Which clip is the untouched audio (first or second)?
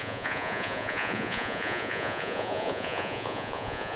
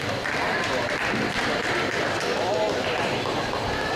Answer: second